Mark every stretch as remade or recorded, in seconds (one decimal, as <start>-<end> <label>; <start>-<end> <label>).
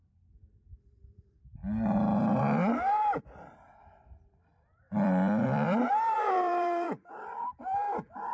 0.0-1.6 remade; 1.6-2.4 recorded; 2.4-8.3 remade